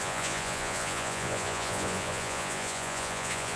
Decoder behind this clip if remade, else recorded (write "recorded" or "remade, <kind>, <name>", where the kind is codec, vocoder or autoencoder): remade, vocoder, Vocos